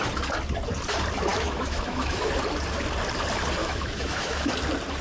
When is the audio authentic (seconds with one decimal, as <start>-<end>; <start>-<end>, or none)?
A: 0.0-1.3; 2.3-3.6; 4.5-5.0